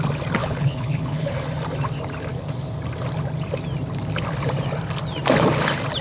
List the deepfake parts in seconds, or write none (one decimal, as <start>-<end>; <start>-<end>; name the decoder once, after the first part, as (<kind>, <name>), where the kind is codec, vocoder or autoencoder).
0.4-1.3 (codec, HILCodec)